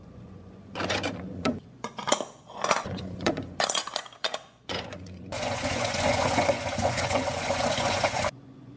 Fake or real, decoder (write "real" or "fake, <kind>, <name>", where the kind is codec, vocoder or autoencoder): fake, vocoder, Vocos